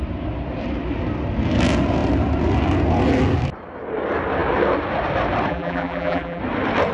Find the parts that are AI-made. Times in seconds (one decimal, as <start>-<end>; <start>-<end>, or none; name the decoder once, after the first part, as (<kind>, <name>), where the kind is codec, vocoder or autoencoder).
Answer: 5.5-6.4 (vocoder, BigVGAN v2)